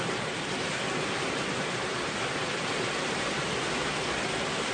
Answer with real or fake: real